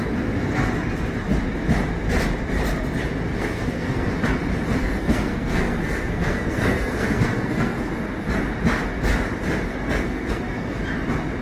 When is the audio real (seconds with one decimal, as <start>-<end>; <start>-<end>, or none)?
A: 0.0-3.3; 4.1-4.8; 7.9-9.7; 10.8-11.4